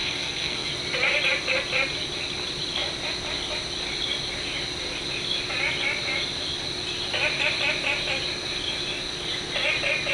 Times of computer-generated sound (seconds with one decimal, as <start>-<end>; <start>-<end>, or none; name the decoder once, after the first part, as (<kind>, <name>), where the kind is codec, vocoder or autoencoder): 0.0-0.7 (codec, SNAC)